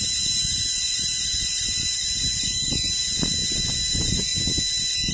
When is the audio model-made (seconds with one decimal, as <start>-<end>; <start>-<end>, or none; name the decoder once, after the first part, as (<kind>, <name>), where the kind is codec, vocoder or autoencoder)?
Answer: 0.0-3.4 (vocoder, BigVGAN v2); 3.9-4.3

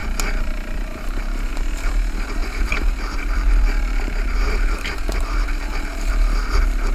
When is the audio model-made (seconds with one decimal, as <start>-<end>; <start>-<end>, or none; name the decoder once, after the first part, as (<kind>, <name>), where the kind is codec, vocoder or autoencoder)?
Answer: 2.4-6.1 (vocoder, BigVGAN v2)

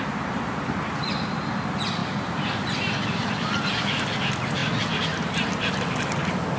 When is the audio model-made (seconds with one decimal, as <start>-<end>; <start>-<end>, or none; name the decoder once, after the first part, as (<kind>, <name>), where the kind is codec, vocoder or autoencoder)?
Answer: 2.0-3.8 (vocoder, BigVGAN v2); 4.6-5.9

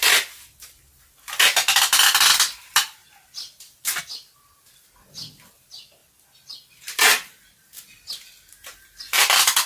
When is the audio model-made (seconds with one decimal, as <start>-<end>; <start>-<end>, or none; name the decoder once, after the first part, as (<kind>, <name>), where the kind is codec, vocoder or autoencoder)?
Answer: 3.0-4.0 (vocoder, BigVGAN v2); 6.0-9.7

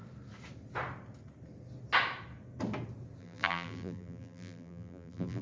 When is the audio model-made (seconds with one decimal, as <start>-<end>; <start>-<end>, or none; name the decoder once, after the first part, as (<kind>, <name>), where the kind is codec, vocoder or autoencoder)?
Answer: 3.2-5.4 (vocoder, BigVGAN v2)

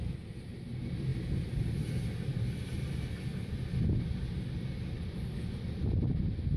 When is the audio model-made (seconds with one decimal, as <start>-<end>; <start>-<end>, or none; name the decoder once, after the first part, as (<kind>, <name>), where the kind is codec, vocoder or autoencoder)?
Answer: none

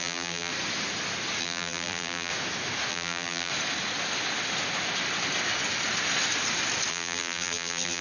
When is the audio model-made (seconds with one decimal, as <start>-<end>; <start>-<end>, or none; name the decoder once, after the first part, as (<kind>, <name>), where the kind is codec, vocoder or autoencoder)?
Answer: 0.0-0.5 (vocoder, BigVGAN v2); 1.4-2.3; 2.9-3.5; 6.9-8.0

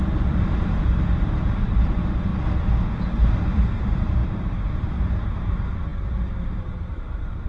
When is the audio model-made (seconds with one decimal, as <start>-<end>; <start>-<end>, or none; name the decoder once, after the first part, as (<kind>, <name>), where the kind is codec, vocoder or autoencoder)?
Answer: 0.0-2.3 (vocoder, BigVGAN v2); 3.0-5.9; 6.5-7.5